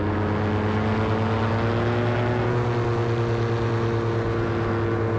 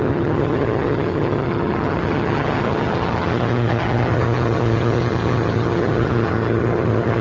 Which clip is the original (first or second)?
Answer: first